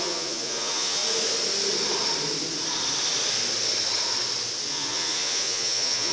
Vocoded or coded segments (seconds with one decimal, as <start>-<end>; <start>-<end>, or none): 0.0-1.0; 4.7-6.1